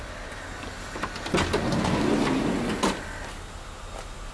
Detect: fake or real real